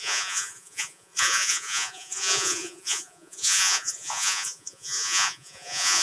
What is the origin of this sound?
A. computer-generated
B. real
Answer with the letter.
A